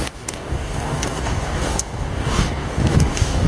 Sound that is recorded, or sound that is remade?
remade